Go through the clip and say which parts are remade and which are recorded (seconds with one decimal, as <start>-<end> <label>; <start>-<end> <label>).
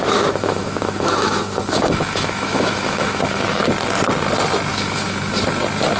0.0-3.6 remade; 3.6-4.7 recorded; 4.7-5.4 remade; 5.4-6.0 recorded